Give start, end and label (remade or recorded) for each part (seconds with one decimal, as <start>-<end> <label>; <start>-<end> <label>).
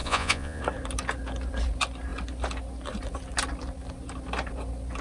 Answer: 0.0-0.6 remade; 0.6-5.0 recorded